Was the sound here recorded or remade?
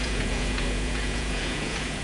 remade